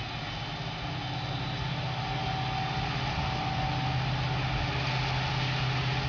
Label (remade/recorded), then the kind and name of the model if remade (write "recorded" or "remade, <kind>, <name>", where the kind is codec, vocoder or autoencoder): recorded